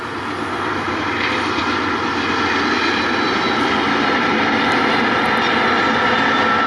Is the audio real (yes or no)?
yes